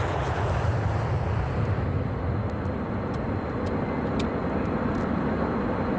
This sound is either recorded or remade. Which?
recorded